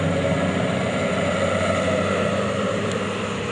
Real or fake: real